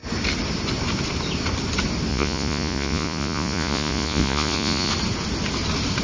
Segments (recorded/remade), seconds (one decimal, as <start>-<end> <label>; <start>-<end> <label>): 0.0-2.1 recorded; 2.1-4.9 remade; 4.9-6.0 recorded